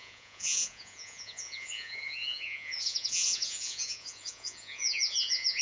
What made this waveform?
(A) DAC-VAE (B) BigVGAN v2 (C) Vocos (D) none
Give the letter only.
C